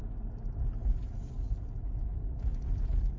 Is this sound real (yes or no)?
yes